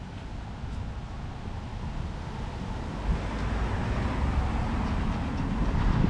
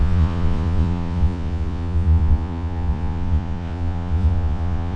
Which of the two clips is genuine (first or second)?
first